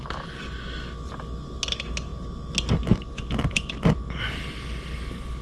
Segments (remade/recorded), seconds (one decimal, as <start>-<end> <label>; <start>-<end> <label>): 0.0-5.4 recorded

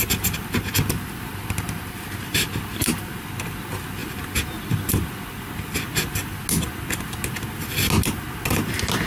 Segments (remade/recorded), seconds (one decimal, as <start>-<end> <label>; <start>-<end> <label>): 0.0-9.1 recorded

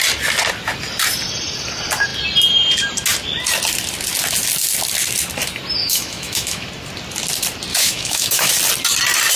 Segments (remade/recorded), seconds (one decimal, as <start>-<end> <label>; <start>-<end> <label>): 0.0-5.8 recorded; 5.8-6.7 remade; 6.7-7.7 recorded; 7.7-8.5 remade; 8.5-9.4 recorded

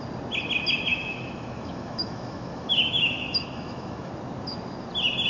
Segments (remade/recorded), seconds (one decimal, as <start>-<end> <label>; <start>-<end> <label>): 0.0-0.9 recorded; 0.9-4.1 remade; 4.1-5.3 recorded

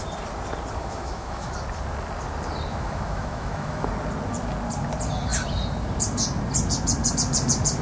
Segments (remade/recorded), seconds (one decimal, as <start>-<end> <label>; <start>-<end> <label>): 0.0-0.8 recorded; 0.8-1.5 remade; 1.5-2.7 recorded; 2.7-3.9 remade; 3.9-7.8 recorded